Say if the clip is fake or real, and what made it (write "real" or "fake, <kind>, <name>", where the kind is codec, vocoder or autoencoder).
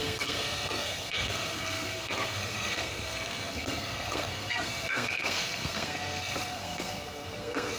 fake, codec, SNAC